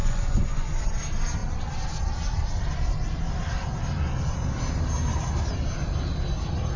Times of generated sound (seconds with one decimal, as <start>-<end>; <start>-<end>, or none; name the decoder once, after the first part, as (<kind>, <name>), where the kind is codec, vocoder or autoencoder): 0.0-0.8 (vocoder, Vocos)